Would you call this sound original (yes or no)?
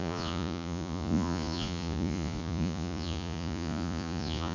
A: no